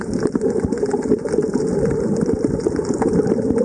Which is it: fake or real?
real